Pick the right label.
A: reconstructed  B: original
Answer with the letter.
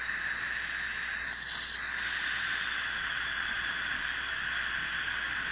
B